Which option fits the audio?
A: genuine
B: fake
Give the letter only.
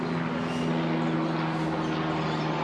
A